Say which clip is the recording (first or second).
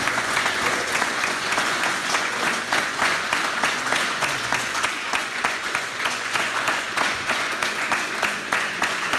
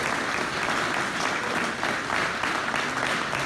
second